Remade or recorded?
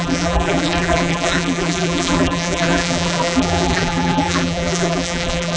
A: remade